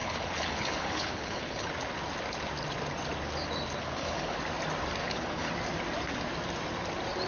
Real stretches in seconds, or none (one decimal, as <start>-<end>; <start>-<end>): 1.7-3.8; 4.4-5.0; 5.5-7.3